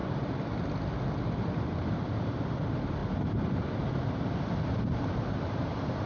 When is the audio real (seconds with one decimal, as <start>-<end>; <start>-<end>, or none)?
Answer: 0.0-1.4; 3.0-3.8